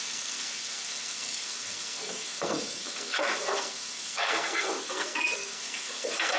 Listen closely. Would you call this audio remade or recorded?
remade